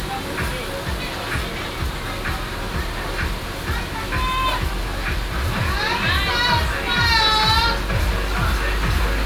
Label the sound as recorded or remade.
recorded